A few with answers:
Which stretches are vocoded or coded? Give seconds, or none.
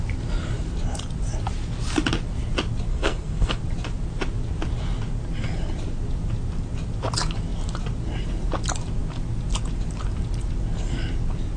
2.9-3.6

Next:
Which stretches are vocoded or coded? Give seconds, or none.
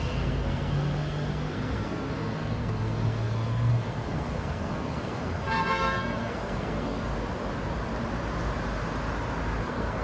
0.0-7.1; 9.6-10.0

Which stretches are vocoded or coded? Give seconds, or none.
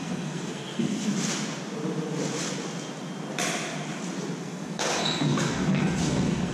0.0-1.1; 4.4-6.5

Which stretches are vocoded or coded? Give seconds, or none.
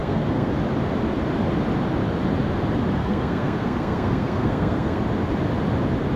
0.0-0.5; 3.0-5.0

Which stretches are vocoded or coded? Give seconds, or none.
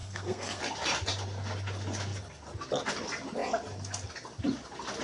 0.0-0.6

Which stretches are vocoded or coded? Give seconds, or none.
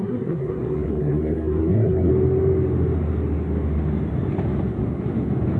0.0-2.1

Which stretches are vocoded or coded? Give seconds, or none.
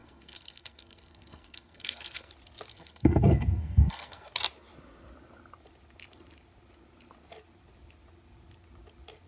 0.0-2.3; 2.7-4.3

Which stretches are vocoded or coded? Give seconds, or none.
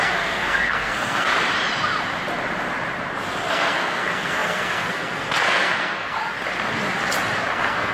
0.0-1.3; 3.5-6.2; 7.5-7.9